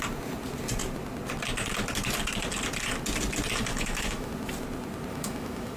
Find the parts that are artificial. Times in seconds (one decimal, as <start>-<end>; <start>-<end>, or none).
3.7-4.3; 5.1-5.8